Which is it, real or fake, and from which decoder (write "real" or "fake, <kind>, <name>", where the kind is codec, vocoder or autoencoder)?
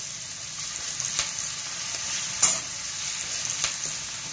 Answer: real